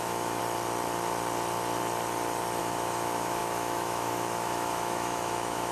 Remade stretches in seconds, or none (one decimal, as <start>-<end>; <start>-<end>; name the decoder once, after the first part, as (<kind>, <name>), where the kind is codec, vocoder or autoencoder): 0.0-0.4 (autoencoder, DAC-VAE); 2.6-5.7